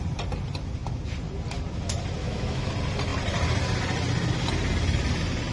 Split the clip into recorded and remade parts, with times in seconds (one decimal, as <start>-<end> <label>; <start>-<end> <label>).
0.0-2.2 recorded; 2.2-2.7 remade; 2.7-5.5 recorded